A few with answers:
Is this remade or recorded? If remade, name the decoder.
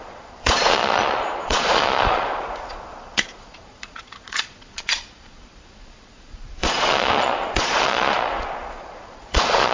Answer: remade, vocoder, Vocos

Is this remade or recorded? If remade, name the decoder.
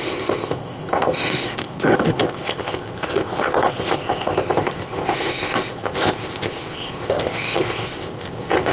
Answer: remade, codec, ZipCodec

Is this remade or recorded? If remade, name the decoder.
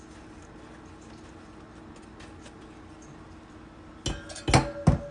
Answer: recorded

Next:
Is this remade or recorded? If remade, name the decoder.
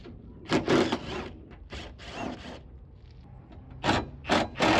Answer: recorded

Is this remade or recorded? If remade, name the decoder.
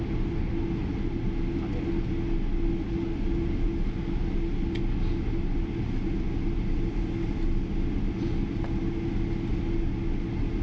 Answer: recorded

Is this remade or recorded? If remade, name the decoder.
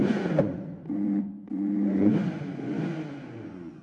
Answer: remade, vocoder, Vocos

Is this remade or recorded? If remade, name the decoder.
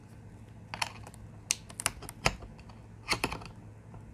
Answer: recorded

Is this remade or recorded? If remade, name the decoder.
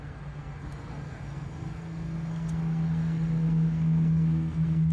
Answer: remade, codec, SNAC